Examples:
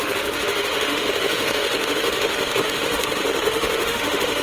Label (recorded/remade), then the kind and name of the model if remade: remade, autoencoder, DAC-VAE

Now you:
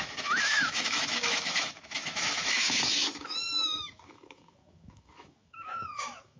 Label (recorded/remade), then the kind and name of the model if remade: remade, autoencoder, DAC-VAE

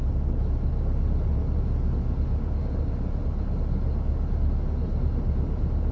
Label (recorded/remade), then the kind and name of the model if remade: recorded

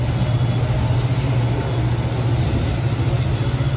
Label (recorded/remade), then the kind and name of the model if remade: recorded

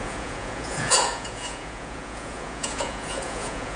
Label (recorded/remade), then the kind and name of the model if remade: remade, vocoder, Vocos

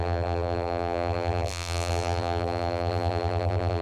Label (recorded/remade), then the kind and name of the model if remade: remade, vocoder, BigVGAN v2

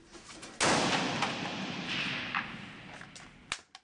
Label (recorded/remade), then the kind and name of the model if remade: recorded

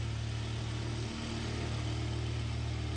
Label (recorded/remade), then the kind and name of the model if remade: recorded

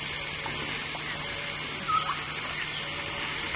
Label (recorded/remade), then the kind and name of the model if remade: recorded